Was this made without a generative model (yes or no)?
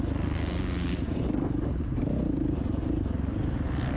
yes